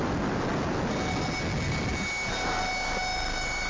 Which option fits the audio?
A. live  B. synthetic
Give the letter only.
A